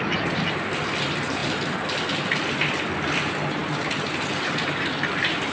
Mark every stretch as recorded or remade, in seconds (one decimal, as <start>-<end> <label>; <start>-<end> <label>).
0.0-5.5 recorded